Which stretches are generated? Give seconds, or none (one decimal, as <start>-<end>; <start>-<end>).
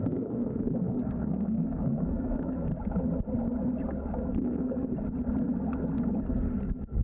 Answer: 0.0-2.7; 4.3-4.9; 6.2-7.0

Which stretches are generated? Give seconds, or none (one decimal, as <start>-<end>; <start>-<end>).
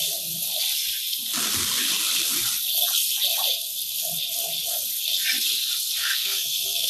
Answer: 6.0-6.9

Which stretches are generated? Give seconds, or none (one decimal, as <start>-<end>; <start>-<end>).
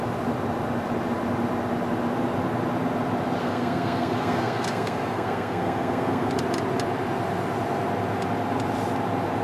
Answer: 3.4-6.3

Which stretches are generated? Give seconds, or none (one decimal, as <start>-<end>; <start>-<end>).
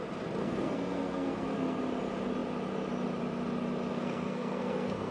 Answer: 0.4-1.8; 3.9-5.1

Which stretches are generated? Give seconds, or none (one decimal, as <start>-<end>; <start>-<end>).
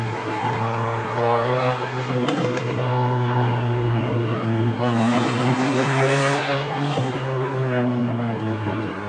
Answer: 0.0-9.1